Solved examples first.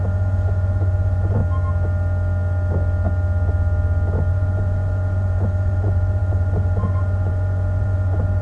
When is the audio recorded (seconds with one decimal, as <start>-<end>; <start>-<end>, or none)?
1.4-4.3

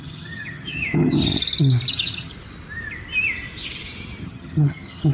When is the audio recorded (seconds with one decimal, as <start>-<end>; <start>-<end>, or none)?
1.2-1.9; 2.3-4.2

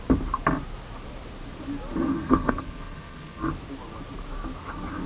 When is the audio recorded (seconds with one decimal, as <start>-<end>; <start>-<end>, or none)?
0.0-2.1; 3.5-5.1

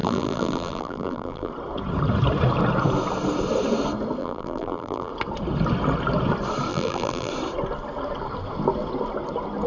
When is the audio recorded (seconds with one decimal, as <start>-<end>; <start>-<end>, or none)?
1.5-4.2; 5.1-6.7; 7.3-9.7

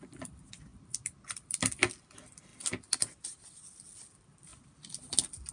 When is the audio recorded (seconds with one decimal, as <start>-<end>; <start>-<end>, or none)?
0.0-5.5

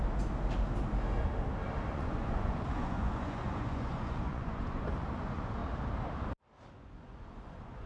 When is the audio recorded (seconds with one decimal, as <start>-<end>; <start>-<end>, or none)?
0.0-1.9; 5.6-6.7